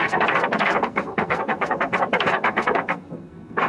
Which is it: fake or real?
fake